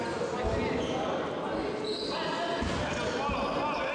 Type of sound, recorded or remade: recorded